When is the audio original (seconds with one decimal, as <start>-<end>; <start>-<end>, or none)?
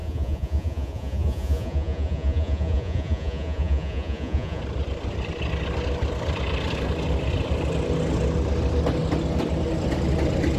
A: 4.6-10.6